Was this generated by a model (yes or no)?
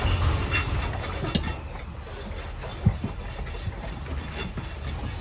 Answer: no